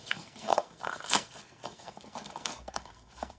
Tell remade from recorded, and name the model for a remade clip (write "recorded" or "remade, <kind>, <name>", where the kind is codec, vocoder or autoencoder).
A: remade, codec, SNAC